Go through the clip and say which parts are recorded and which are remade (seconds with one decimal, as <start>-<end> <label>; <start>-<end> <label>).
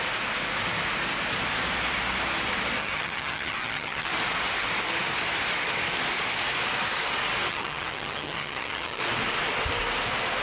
0.0-2.8 recorded; 2.8-4.1 remade; 4.1-7.5 recorded; 7.5-9.0 remade; 9.0-10.4 recorded